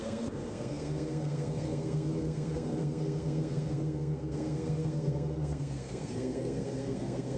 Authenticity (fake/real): fake